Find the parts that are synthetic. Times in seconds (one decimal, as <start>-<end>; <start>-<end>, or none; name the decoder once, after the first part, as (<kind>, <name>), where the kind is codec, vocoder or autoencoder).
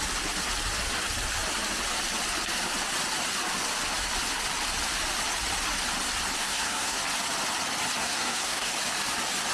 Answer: 6.4-7.0 (codec, SNAC); 8.0-8.7